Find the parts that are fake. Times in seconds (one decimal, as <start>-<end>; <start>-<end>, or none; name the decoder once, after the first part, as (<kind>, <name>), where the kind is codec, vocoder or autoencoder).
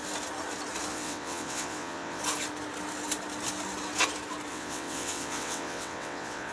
0.9-2.2 (vocoder, WaveNeXt); 4.5-6.5